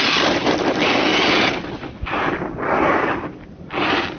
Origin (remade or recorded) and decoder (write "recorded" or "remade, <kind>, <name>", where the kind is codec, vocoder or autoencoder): recorded